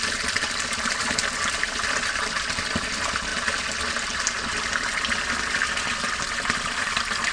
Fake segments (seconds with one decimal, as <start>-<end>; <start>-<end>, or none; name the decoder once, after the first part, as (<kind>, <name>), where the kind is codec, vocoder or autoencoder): 0.0-3.3 (vocoder, BigVGAN v2); 5.3-7.3